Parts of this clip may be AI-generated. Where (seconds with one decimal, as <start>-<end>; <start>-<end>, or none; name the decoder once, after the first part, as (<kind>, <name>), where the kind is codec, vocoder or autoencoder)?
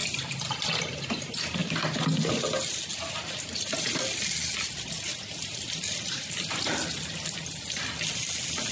none